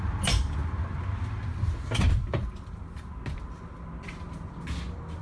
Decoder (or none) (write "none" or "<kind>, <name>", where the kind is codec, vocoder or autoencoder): none